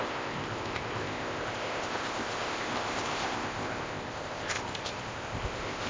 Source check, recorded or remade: remade